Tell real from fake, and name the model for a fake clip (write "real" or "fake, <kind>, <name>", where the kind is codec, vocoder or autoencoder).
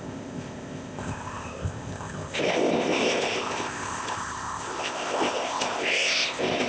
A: fake, codec, ZipCodec